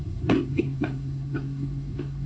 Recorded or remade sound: remade